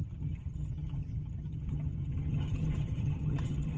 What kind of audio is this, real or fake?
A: fake